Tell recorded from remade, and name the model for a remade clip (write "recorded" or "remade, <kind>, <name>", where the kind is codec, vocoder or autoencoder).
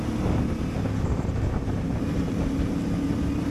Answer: recorded